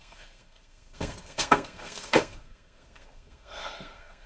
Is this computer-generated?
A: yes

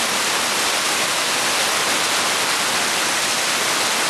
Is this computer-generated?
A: no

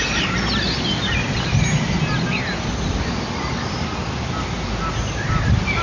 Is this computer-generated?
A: no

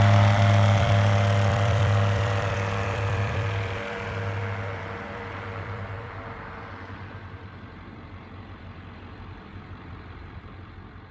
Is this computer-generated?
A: yes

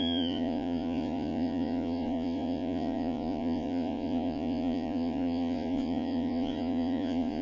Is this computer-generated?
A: yes